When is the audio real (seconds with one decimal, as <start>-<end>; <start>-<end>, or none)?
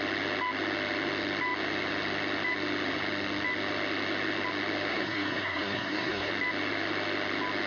0.0-4.9; 6.3-7.7